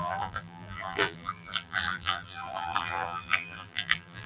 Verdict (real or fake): fake